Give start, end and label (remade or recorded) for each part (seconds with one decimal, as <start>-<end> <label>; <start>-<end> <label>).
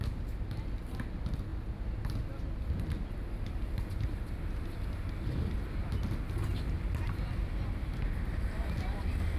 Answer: 0.0-6.5 recorded; 6.5-7.2 remade; 7.2-9.4 recorded